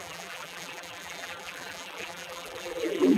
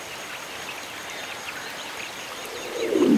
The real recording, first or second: second